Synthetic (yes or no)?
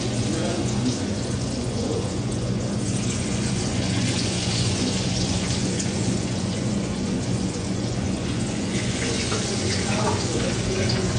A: yes